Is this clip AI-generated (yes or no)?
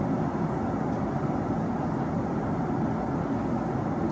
no